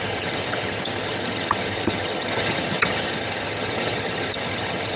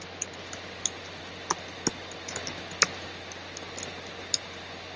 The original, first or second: second